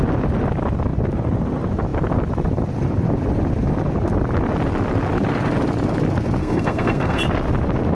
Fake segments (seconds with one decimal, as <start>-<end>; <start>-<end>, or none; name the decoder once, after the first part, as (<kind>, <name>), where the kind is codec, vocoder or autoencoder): 6.4-7.2 (codec, SNAC)